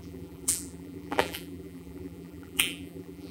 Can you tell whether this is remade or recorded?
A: remade